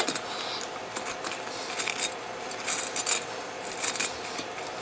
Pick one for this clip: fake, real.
real